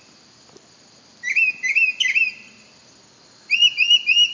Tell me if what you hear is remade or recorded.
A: recorded